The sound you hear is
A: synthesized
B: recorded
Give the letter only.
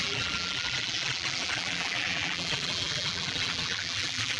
A